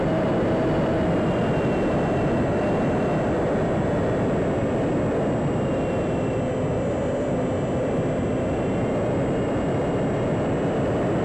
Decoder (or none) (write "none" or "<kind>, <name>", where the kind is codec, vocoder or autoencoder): none